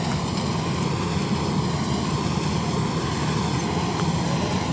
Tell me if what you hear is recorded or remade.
recorded